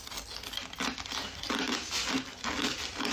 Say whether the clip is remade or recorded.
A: recorded